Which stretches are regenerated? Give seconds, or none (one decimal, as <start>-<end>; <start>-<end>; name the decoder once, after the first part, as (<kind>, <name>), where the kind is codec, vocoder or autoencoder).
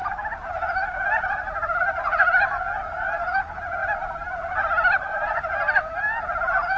none